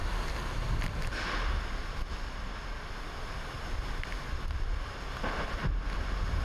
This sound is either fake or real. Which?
real